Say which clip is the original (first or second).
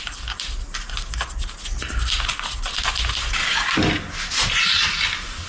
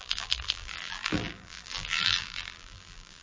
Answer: first